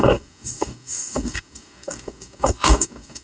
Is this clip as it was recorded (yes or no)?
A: no